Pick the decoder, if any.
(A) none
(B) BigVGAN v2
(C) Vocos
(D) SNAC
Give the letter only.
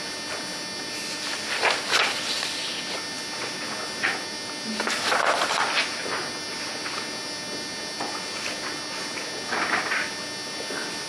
A